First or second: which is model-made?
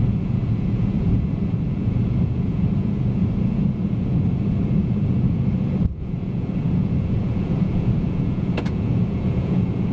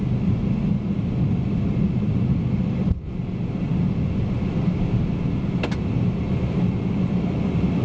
first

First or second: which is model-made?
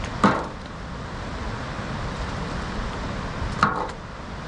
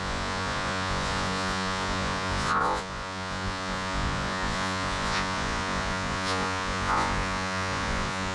second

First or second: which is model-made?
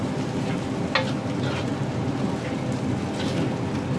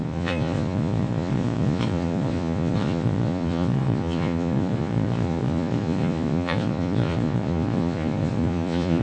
second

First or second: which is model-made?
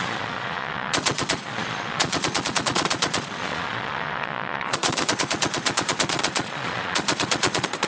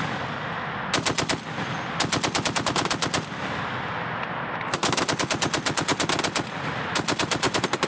first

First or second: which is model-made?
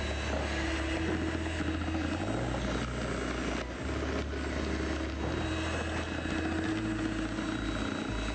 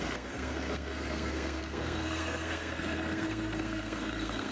second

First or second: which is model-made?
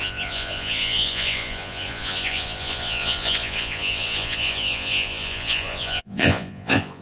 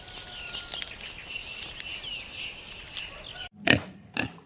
first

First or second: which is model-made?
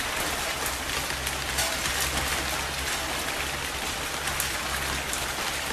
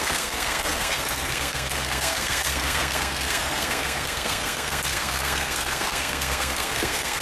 second